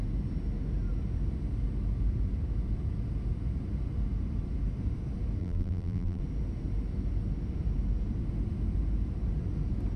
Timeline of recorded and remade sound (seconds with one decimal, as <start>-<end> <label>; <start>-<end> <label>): 0.0-5.4 recorded; 5.4-6.2 remade; 6.2-10.0 recorded